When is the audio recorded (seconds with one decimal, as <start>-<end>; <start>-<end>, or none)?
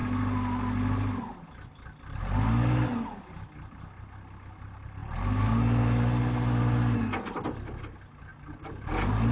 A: 0.0-9.3